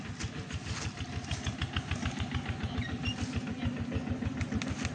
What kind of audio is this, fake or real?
real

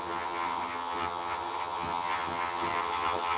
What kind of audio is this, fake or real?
fake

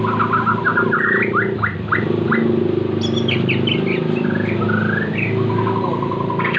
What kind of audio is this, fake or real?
real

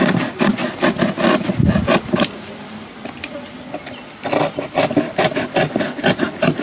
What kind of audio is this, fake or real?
real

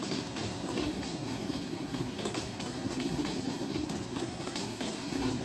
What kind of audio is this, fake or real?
fake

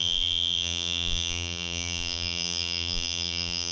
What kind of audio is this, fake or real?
fake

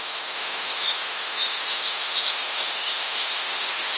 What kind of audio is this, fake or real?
fake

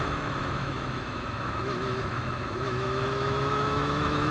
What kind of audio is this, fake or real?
fake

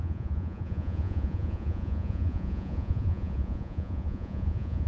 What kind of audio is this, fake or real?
fake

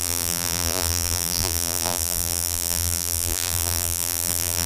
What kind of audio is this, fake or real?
fake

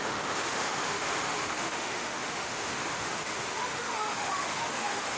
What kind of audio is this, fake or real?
fake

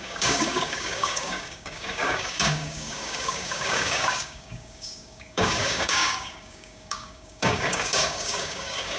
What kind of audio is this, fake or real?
fake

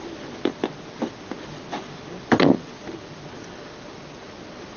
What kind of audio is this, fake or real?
real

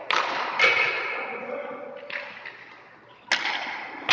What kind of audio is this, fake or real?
real